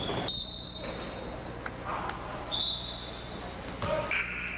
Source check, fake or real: real